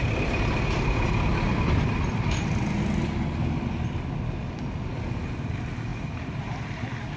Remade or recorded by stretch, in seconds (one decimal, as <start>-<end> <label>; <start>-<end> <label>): 0.0-7.2 recorded